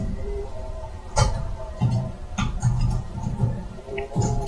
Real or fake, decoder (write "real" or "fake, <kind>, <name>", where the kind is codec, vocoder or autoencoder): fake, vocoder, BigVGAN v2